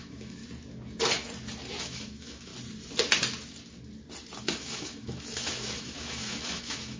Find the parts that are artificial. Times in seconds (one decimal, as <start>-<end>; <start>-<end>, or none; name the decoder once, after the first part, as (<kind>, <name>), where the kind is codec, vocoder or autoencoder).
0.0-0.4 (autoencoder, DAC-VAE); 1.8-2.5; 4.4-7.0